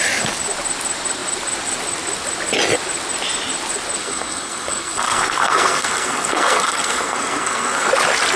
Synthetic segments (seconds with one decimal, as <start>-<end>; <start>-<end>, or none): 4.0-7.9